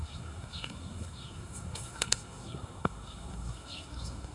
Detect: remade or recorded remade